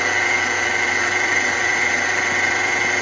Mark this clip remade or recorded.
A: remade